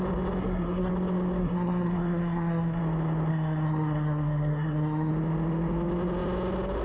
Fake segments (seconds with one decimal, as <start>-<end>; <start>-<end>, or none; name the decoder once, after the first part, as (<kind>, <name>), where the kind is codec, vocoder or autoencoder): 0.4-0.9 (codec, SNAC); 1.4-2.8; 3.3-5.1